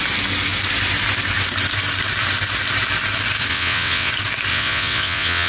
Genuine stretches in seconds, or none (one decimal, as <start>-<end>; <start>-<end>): 0.0-3.5; 4.1-4.5